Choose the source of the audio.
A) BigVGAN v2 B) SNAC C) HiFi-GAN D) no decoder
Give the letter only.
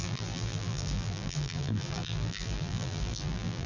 A